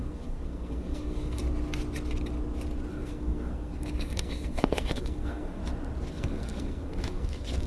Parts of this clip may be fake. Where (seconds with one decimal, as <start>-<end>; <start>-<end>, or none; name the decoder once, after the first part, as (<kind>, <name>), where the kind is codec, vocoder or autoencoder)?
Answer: 0.0-1.4 (codec, SNAC); 2.9-5.6; 6.1-7.7